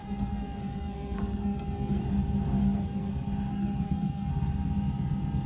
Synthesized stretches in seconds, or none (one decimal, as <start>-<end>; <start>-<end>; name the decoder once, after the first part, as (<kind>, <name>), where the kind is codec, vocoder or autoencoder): 0.0-2.0 (codec, SNAC); 2.6-3.1; 3.5-4.3